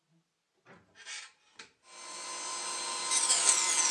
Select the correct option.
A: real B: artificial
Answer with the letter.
A